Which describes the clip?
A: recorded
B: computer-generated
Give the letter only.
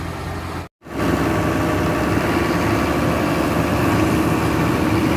A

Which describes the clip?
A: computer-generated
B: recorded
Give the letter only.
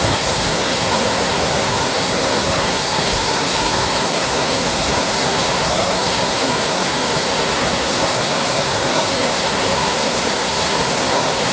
A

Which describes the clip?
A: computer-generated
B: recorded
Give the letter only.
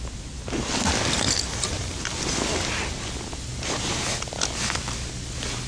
B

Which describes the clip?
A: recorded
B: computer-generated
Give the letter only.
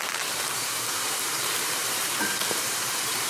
B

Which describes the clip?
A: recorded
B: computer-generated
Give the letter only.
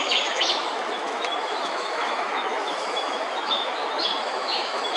B